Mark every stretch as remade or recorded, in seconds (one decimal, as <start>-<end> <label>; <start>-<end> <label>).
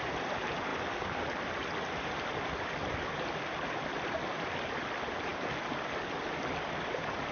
0.0-7.3 recorded